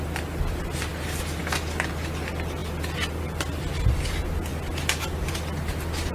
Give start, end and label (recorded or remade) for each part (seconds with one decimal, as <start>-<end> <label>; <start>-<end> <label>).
0.0-2.6 recorded; 2.6-3.7 remade; 3.7-4.5 recorded; 4.5-5.3 remade; 5.3-6.1 recorded